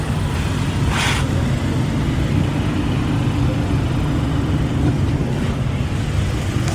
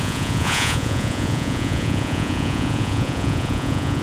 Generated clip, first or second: second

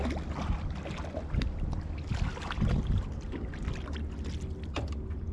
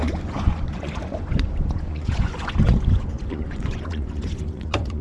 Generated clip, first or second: second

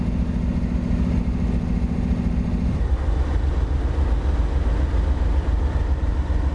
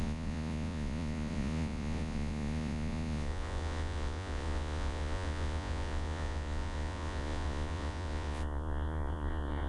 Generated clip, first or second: second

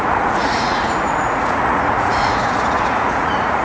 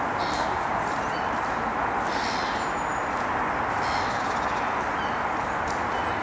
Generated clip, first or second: first